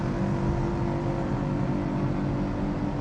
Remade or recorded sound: recorded